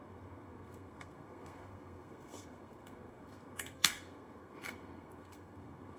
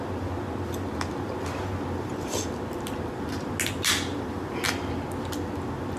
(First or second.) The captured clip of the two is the second